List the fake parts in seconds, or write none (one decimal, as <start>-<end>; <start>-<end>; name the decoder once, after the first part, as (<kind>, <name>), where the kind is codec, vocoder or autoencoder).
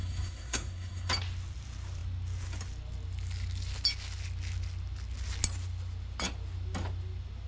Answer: 0.0-1.1 (codec, SNAC)